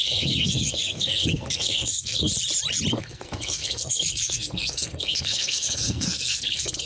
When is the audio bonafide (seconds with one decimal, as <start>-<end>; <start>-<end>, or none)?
2.3-2.9